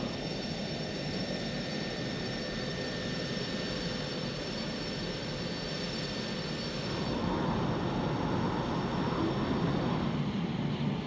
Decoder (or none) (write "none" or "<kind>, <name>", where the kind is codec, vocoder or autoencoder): none